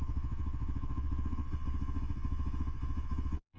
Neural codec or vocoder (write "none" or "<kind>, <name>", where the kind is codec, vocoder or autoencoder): vocoder, Vocos